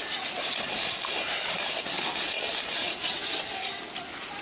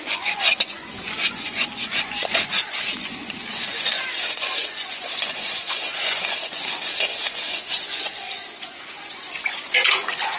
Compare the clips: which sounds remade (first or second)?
second